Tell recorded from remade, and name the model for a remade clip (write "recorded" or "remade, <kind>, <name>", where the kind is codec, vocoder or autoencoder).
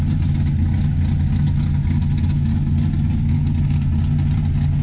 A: recorded